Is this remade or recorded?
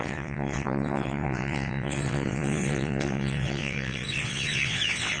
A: remade